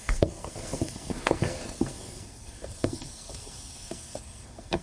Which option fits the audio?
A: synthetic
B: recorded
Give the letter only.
A